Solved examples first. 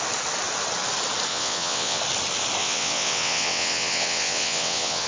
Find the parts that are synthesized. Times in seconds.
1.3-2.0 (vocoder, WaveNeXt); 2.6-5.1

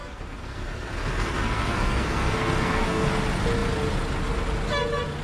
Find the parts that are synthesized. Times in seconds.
0.0-3.1 (codec, SNAC)

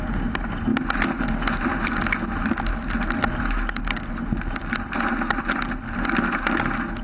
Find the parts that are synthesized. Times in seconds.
none

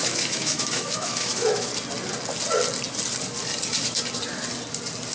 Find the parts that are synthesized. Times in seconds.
0.0-1.7 (autoencoder, DAC-VAE)

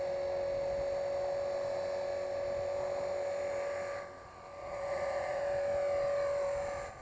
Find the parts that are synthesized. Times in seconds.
4.6-5.4 (vocoder, Vocos)

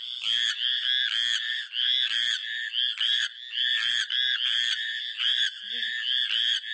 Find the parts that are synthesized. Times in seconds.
none

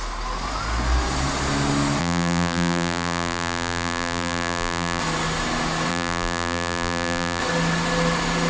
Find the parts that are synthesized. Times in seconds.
2.0-5.0 (vocoder, BigVGAN v2); 5.9-7.4

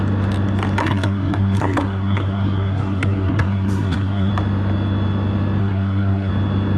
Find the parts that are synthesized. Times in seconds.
0.8-4.3 (codec, SNAC); 5.6-6.3